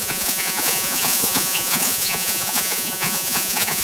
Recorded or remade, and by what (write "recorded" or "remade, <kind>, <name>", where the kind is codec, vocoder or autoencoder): remade, vocoder, Vocos